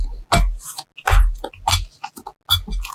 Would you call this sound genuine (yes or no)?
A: yes